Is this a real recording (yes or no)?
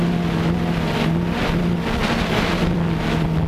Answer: yes